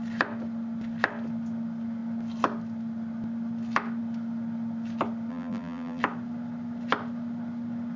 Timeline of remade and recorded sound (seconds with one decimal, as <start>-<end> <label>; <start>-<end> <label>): 0.0-5.3 recorded; 5.3-6.0 remade; 6.0-8.0 recorded